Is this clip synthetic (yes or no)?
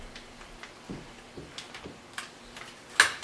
no